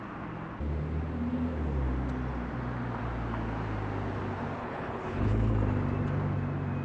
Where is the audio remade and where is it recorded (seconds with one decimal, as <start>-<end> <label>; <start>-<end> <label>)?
0.0-4.6 recorded; 4.6-5.5 remade; 5.5-6.8 recorded